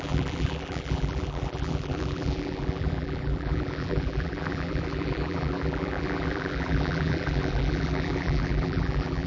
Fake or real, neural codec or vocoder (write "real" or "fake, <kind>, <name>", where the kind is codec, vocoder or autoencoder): fake, vocoder, BigVGAN v2